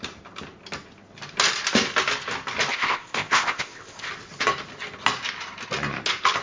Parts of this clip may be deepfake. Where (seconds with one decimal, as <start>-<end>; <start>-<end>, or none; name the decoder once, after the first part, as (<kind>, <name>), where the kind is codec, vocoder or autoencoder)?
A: 2.7-4.1 (codec, ZipCodec)